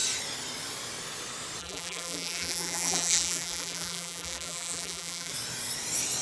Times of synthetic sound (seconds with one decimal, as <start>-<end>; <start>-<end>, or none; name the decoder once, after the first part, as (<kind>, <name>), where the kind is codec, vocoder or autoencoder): 1.6-5.3 (vocoder, BigVGAN v2)